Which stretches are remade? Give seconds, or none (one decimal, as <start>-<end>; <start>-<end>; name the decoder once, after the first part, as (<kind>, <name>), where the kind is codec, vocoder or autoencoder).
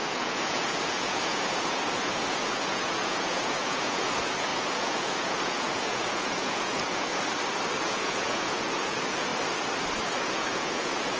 0.0-7.1 (vocoder, Vocos); 7.8-9.3; 10.2-11.2